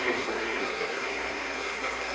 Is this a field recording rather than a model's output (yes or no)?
no